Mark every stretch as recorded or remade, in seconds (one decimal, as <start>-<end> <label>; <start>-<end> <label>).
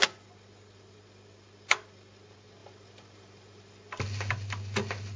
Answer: 0.0-5.2 recorded